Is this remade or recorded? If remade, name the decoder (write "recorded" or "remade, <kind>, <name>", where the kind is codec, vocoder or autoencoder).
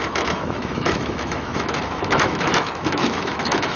remade, autoencoder, DAC-VAE